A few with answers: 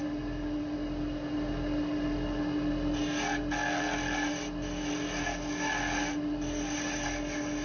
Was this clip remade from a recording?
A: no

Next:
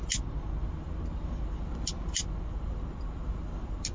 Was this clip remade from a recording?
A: no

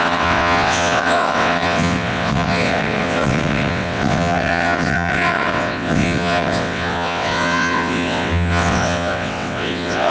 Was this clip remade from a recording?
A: yes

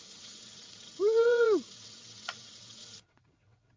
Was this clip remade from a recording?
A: yes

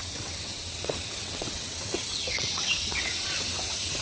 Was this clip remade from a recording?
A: yes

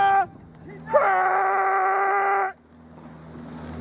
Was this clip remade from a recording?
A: no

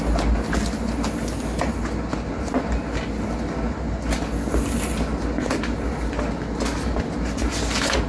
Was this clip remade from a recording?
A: no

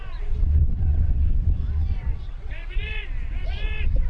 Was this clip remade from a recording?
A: yes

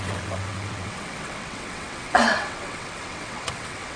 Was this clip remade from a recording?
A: yes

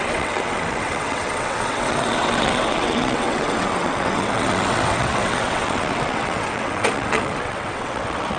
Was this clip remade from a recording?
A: yes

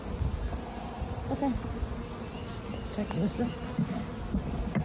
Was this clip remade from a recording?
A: no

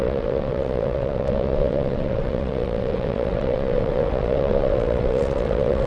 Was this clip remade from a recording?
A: yes